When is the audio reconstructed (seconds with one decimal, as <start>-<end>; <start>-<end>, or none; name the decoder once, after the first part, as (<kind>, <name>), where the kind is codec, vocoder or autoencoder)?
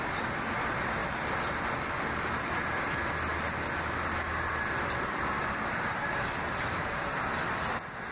none